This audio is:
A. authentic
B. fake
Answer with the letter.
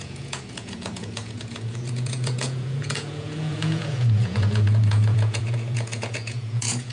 B